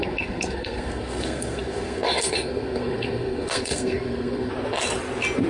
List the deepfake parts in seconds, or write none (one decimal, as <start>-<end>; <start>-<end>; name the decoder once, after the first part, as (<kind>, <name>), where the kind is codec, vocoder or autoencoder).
0.0-4.5 (codec, SNAC)